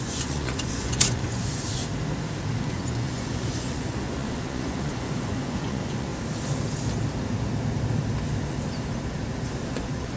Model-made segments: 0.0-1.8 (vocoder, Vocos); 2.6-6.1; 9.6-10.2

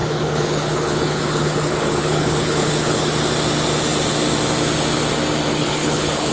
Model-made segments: 0.0-3.0 (codec, HILCodec); 5.5-6.3